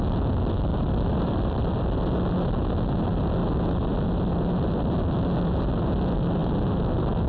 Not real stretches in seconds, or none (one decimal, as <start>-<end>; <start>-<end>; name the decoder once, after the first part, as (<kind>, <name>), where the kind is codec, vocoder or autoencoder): 0.7-1.8 (vocoder, BigVGAN v2)